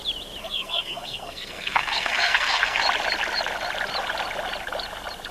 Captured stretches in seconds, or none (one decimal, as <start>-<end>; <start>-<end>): 0.0-0.4; 2.8-5.3